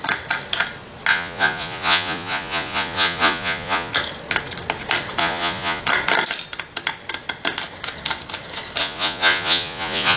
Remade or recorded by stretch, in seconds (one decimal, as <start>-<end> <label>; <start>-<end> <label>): 0.0-1.1 recorded; 1.1-3.9 remade; 3.9-5.2 recorded; 5.2-5.8 remade; 5.8-8.8 recorded; 8.8-10.2 remade